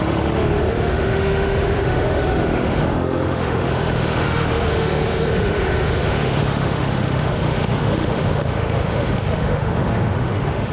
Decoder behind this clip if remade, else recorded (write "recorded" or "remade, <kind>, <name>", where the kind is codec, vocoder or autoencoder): remade, autoencoder, DAC-VAE